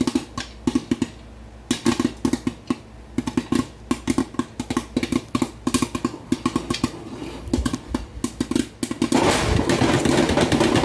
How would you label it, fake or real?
real